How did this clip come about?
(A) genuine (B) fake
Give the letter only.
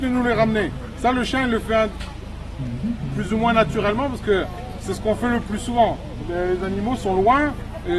A